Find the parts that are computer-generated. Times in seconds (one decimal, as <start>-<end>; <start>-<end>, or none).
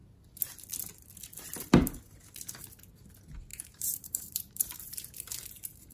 3.5-5.9